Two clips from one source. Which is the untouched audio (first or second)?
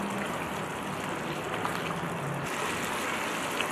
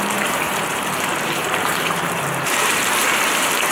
first